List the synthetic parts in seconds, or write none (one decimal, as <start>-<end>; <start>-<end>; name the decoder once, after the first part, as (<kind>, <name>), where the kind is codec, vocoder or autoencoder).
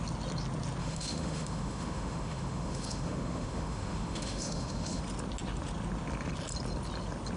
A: 0.8-5.0 (autoencoder, DAC-VAE)